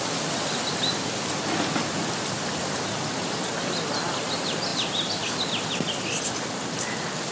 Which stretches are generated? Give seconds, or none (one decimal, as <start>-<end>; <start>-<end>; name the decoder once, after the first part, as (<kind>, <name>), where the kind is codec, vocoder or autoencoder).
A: none